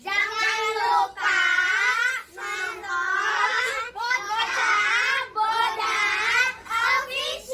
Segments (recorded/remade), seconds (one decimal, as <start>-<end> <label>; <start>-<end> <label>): 0.0-3.3 recorded; 3.3-4.9 remade; 4.9-7.5 recorded